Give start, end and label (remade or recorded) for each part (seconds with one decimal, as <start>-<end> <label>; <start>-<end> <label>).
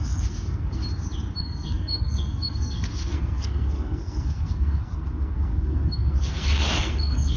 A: 0.0-0.8 remade; 0.8-1.4 recorded; 1.4-7.4 remade